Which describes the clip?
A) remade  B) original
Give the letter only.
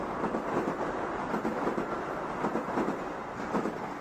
B